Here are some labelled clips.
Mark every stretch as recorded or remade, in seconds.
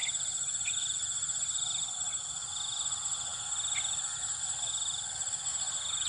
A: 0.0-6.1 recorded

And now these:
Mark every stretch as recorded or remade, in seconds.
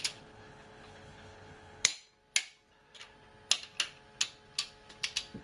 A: 0.0-1.9 remade; 1.9-5.4 recorded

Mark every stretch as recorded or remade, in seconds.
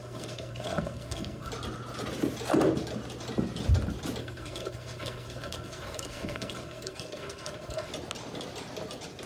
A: 0.0-1.5 remade; 1.5-4.2 recorded; 4.2-7.9 remade; 7.9-9.3 recorded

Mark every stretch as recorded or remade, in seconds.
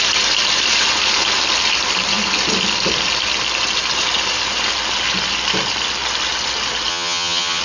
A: 0.0-6.9 recorded; 6.9-7.6 remade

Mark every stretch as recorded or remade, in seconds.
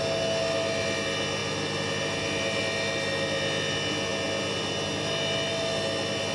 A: 0.0-6.3 recorded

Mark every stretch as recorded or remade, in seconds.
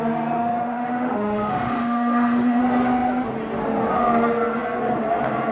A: 0.0-0.4 recorded; 0.4-2.6 remade; 2.6-5.5 recorded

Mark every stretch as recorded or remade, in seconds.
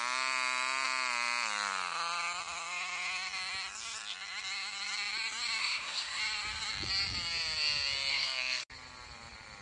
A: 0.0-5.6 recorded; 5.6-6.2 remade; 6.2-8.1 recorded; 8.1-8.7 remade; 8.7-9.6 recorded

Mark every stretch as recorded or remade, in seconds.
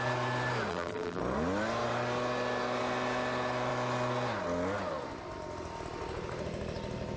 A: 0.0-0.7 recorded; 0.7-1.2 remade; 1.2-7.2 recorded